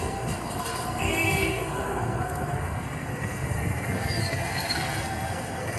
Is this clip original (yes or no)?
no